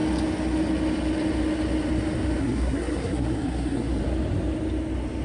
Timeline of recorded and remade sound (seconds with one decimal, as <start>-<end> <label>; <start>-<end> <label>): 0.0-2.4 recorded; 2.4-4.0 remade; 4.0-5.2 recorded